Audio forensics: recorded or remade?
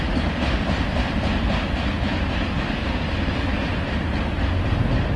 recorded